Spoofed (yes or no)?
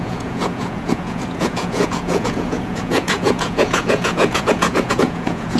yes